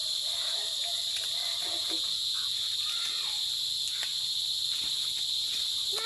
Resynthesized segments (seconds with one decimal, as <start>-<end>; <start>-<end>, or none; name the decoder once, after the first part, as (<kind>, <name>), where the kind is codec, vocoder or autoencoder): 1.8-2.7 (vocoder, Vocos)